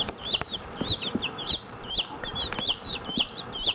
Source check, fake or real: fake